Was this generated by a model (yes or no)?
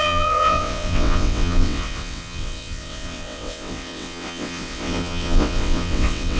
yes